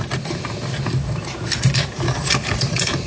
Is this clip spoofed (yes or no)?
no